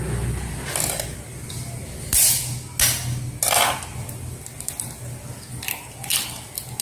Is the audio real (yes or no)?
yes